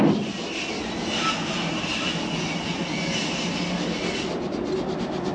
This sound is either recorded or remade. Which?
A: recorded